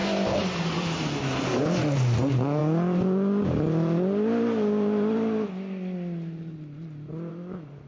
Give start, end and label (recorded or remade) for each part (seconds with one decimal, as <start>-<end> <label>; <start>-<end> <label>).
0.0-7.9 recorded